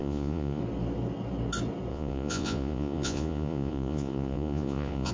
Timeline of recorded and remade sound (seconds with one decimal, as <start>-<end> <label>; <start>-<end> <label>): 0.0-0.6 remade; 0.6-1.9 recorded; 1.9-5.1 remade